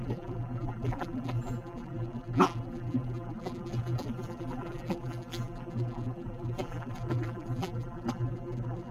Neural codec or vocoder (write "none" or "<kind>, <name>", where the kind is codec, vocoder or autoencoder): vocoder, BigVGAN v2